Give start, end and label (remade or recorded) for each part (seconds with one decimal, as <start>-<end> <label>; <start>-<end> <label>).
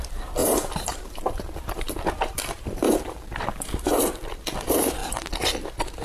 0.0-0.4 recorded; 0.4-4.0 remade; 4.0-6.0 recorded